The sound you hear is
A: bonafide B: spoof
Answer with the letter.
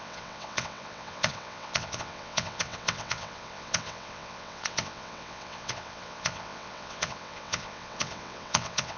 B